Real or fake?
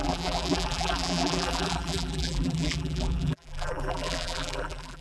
fake